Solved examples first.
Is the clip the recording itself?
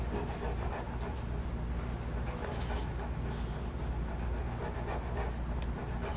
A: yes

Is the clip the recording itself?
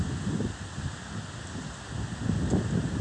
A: yes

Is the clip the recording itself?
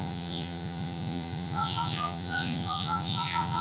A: no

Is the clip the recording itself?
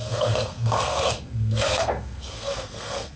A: no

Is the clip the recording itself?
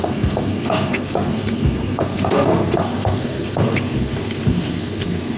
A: no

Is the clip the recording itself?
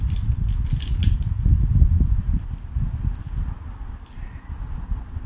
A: yes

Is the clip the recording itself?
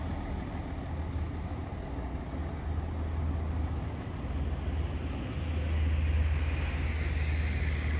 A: yes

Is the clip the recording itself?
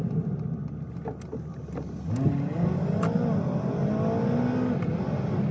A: yes